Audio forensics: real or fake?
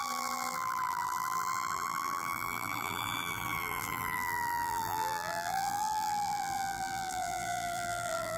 fake